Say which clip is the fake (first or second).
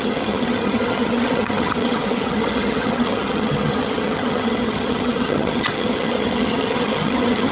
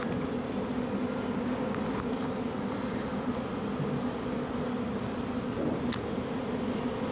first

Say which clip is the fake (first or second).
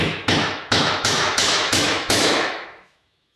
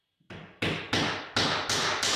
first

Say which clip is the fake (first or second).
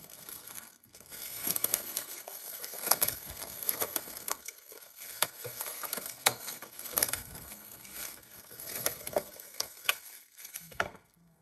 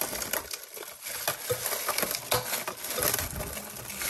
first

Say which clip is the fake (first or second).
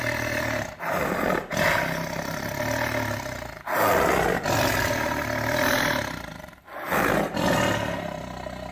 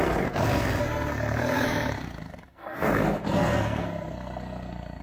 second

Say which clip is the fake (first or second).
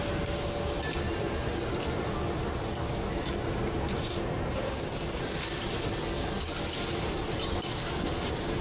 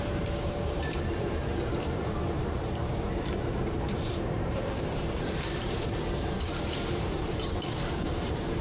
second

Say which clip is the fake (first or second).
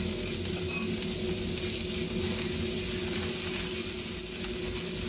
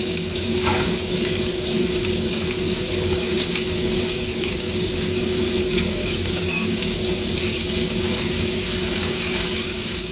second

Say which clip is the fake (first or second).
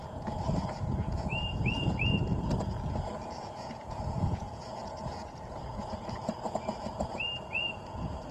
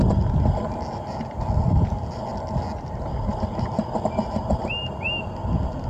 first